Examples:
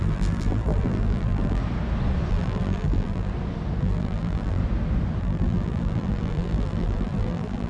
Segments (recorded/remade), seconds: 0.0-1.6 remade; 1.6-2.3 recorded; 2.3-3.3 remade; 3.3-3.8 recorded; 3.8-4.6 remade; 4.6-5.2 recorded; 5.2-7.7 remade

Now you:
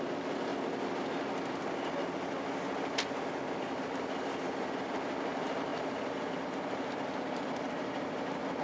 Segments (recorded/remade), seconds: 0.0-0.5 remade; 0.5-3.6 recorded; 3.6-8.6 remade

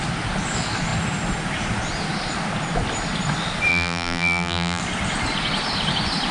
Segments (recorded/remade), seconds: 0.0-3.7 recorded; 3.7-4.8 remade; 4.8-6.3 recorded

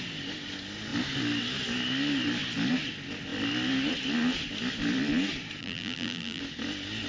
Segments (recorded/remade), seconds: 0.0-5.6 recorded; 5.6-6.4 remade; 6.4-7.1 recorded

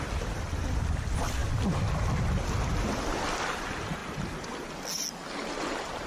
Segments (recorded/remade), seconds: 0.0-1.4 recorded; 1.4-1.9 remade; 1.9-4.0 recorded; 4.0-4.7 remade; 4.7-6.1 recorded

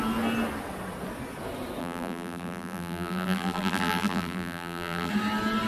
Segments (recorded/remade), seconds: 0.0-1.8 recorded; 1.8-5.1 remade; 5.1-5.7 recorded

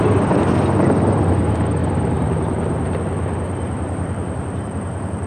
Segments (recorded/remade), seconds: 0.0-1.8 recorded; 1.8-5.3 remade

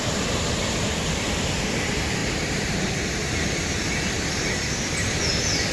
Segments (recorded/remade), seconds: 0.0-5.7 recorded